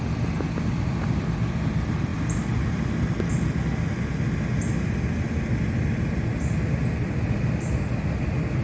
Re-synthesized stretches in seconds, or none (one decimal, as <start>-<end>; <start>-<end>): none